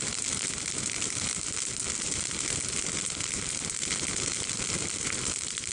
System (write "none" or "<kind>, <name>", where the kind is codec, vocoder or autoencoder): none